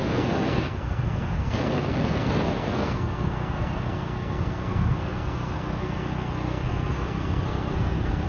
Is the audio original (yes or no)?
no